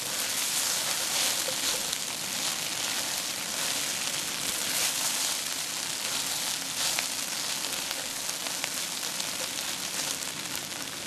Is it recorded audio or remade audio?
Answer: recorded